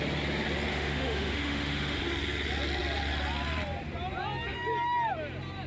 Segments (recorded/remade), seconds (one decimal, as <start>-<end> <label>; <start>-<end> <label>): 0.0-0.7 recorded; 0.7-2.0 remade; 2.0-5.7 recorded